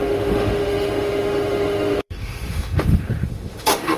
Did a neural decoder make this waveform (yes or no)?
yes